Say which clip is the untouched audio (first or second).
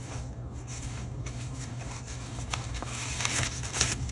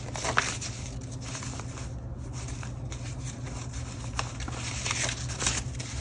second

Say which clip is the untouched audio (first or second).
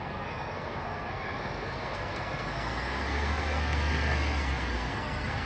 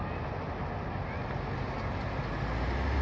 second